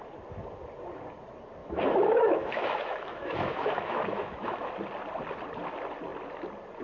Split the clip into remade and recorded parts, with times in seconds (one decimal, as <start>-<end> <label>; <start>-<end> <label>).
0.0-1.6 recorded; 1.6-4.7 remade; 4.7-6.8 recorded